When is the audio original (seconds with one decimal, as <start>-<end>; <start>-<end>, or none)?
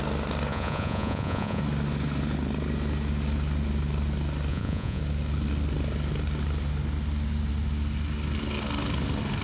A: 0.0-0.5; 1.6-4.5; 5.0-9.4